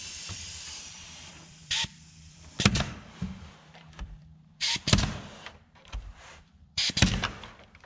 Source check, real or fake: fake